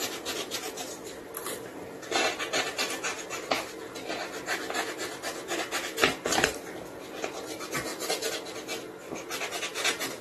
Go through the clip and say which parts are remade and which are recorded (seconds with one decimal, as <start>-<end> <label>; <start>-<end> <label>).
0.0-3.7 remade; 3.7-10.2 recorded